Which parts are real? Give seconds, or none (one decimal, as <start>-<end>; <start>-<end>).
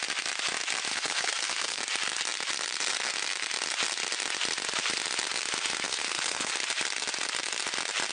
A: 0.0-0.9; 1.8-5.9; 6.5-8.1